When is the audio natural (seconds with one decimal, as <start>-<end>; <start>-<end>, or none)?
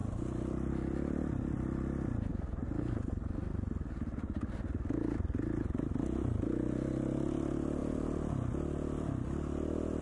0.0-10.0